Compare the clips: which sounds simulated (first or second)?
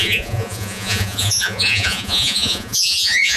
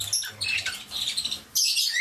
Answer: first